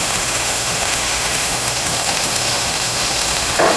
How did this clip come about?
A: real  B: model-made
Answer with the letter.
B